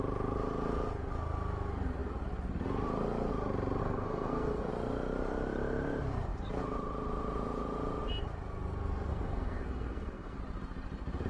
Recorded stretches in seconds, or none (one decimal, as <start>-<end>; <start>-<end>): 0.0-3.8; 4.7-9.1; 10.4-11.3